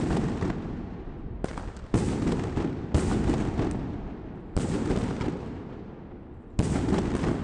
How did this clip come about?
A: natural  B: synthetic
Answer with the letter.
A